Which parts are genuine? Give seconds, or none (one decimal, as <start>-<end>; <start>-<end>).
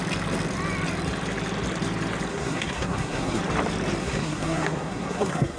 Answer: 0.0-2.3; 3.4-4.0